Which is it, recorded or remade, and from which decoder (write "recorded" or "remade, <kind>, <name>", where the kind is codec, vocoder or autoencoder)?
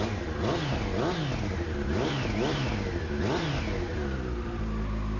recorded